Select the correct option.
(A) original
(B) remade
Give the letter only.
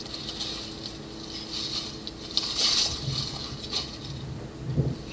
A